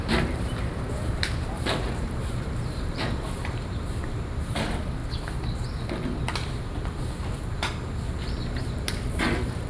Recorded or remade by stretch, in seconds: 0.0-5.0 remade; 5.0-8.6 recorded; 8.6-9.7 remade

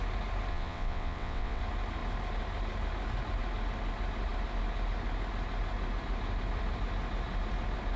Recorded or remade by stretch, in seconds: 0.0-0.5 recorded; 0.5-1.6 remade; 1.6-8.0 recorded